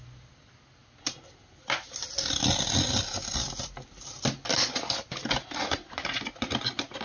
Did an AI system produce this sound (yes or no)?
no